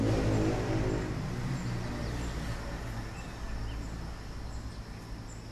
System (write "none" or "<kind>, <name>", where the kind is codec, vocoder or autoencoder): none